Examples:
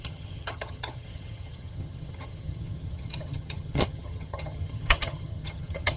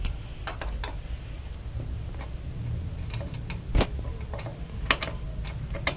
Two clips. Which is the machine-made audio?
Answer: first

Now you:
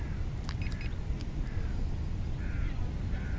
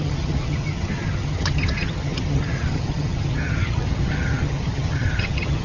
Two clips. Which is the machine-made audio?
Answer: second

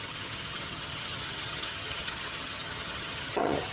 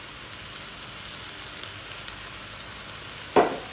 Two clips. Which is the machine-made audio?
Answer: first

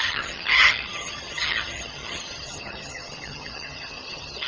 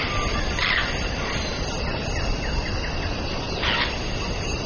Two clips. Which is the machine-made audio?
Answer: first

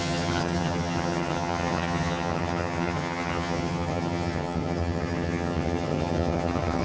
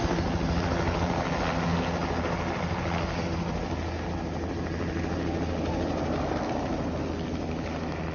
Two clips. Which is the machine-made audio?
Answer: first